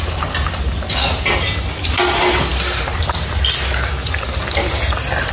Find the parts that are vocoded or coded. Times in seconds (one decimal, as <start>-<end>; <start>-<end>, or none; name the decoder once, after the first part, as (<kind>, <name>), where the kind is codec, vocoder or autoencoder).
none